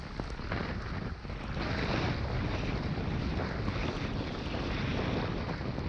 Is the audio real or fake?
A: real